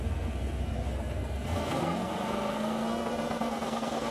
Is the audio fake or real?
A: fake